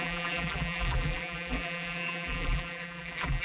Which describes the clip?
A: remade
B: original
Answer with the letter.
A